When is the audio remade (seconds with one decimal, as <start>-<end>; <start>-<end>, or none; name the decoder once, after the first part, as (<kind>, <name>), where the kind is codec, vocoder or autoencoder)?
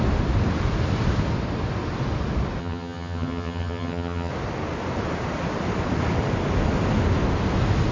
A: 2.6-4.3 (vocoder, HiFi-GAN)